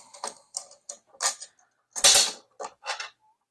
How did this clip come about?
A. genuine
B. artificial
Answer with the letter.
A